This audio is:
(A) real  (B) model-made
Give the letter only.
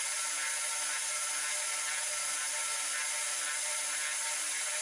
A